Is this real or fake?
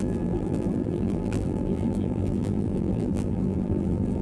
fake